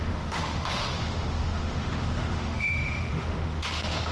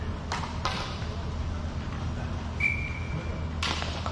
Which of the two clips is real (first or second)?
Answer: second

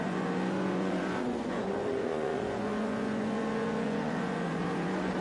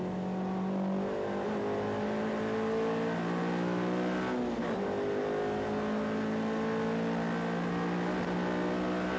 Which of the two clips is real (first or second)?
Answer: second